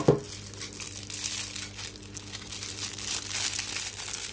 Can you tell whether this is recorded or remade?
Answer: recorded